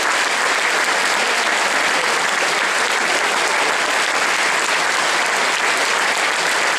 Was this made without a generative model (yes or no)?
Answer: yes